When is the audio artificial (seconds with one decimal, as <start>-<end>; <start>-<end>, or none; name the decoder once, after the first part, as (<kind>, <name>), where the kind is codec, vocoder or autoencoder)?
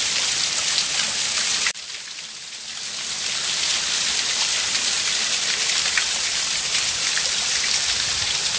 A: none